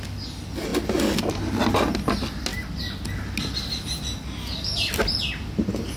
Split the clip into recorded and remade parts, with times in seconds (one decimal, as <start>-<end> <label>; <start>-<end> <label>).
0.0-6.0 recorded